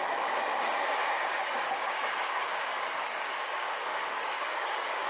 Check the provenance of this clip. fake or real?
fake